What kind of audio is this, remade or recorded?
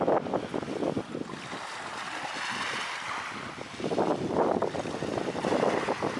recorded